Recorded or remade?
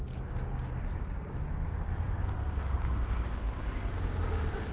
remade